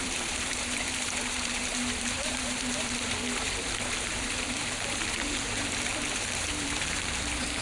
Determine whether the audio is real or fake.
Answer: fake